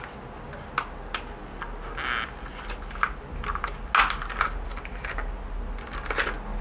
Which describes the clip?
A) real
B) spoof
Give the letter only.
A